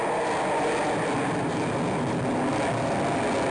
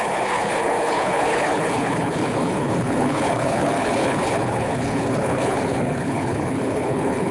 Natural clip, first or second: first